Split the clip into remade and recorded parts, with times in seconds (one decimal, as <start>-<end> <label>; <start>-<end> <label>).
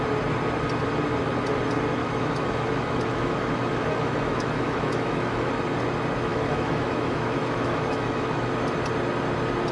0.0-2.0 recorded; 2.0-5.5 remade; 5.5-6.3 recorded; 6.3-8.5 remade; 8.5-9.7 recorded